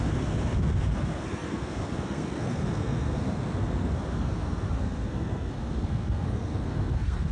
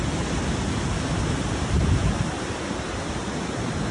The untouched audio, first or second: second